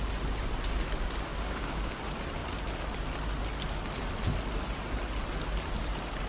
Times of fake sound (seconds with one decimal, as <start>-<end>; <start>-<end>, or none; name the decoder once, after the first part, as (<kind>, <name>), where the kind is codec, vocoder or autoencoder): 1.3-2.0 (codec, DAC)